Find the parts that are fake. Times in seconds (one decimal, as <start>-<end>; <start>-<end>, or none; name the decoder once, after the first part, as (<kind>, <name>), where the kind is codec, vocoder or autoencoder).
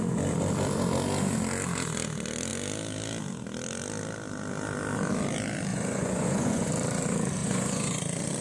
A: 5.7-6.7 (vocoder, Vocos); 7.4-8.0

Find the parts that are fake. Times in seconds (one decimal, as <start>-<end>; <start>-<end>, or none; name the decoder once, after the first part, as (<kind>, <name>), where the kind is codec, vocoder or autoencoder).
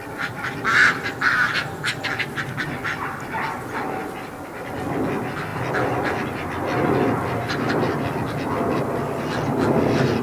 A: none